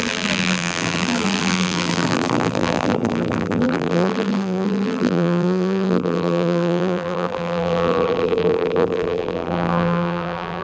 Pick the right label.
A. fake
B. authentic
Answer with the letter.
A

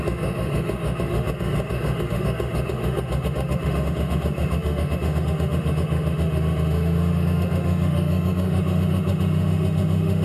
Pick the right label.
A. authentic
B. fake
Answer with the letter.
B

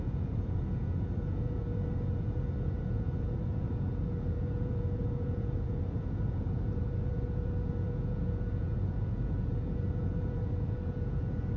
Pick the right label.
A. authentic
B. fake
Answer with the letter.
B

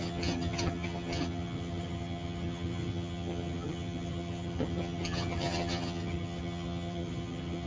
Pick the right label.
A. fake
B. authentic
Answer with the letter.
A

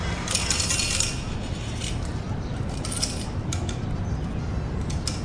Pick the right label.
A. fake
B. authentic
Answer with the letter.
B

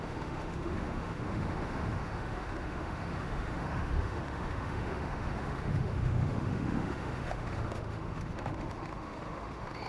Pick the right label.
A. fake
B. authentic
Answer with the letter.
A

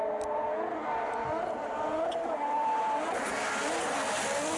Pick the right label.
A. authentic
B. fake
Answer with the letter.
A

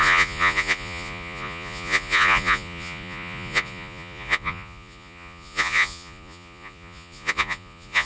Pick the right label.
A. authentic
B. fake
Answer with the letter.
B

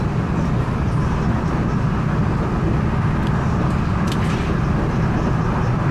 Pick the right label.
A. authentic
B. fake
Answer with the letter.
A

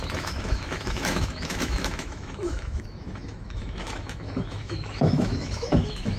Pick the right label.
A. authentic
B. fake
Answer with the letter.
B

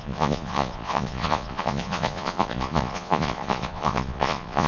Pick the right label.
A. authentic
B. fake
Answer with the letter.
B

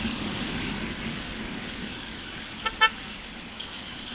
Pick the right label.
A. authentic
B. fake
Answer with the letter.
B